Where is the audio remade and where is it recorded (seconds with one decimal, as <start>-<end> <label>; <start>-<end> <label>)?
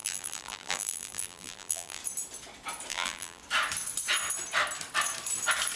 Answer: 0.0-2.0 remade; 2.0-2.9 recorded; 2.9-3.4 remade; 3.4-5.8 recorded